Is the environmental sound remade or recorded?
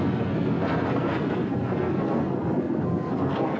remade